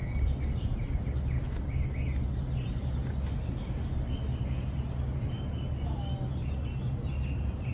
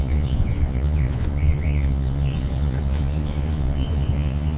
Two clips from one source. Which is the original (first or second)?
first